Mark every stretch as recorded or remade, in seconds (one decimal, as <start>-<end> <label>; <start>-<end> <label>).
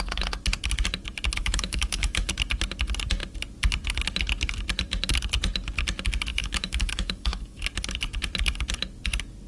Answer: 0.0-1.4 recorded; 1.4-2.3 remade; 2.3-6.3 recorded; 6.3-7.6 remade; 7.6-9.5 recorded